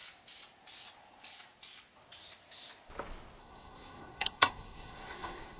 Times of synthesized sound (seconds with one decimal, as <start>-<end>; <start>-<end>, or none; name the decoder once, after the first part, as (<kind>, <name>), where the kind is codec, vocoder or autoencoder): 3.4-5.6 (codec, SNAC)